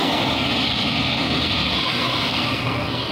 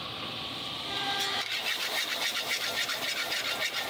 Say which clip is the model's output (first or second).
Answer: first